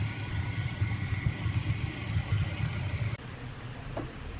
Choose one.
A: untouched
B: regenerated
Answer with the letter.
A